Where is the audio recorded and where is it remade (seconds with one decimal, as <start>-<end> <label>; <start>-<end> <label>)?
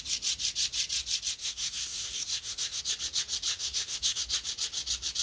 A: 0.0-1.4 recorded; 1.4-2.8 remade; 2.8-3.5 recorded; 3.5-4.2 remade; 4.2-5.2 recorded